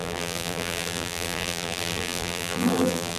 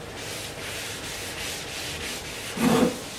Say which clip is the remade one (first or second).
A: first